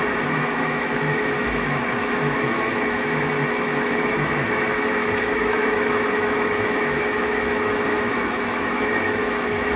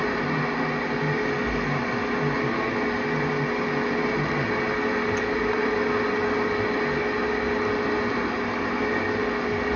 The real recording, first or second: second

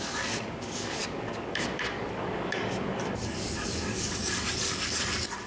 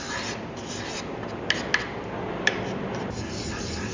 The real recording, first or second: second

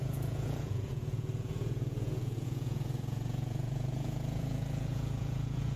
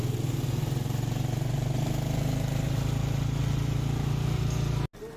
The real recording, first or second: second